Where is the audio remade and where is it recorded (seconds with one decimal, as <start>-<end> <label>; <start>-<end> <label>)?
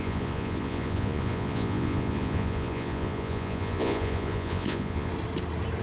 0.0-5.1 remade; 5.1-5.8 recorded